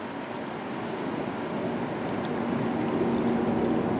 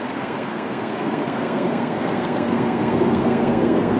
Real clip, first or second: first